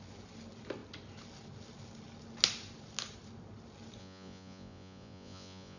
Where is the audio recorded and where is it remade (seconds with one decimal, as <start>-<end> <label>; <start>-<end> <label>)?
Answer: 0.0-4.0 recorded; 4.0-5.8 remade